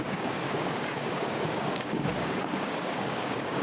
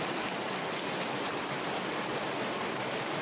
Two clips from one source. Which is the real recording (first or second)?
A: second